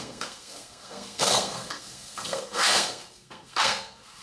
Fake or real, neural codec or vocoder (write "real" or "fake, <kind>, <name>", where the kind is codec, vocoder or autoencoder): fake, codec, SNAC